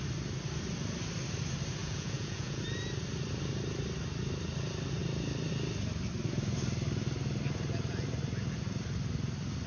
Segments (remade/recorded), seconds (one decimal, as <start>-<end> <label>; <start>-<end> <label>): 0.0-1.8 recorded; 1.8-2.6 remade; 2.6-9.7 recorded